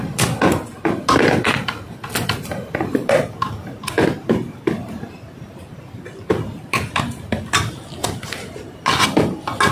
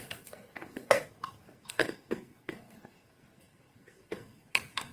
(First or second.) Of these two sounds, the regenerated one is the second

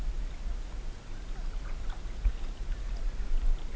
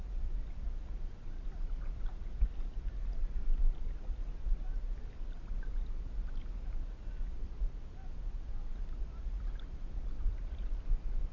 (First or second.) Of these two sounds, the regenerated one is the second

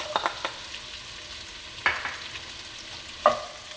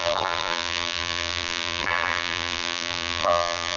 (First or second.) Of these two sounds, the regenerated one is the second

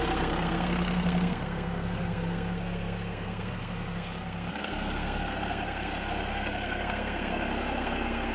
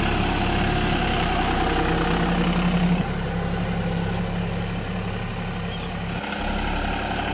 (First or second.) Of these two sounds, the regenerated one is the first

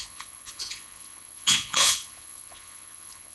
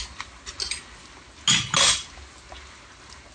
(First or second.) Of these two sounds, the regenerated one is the first